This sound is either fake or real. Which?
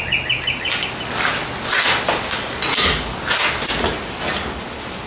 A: real